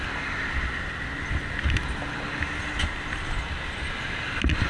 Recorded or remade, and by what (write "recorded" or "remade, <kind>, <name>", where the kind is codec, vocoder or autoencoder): recorded